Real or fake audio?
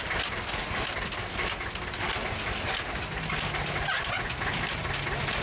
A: real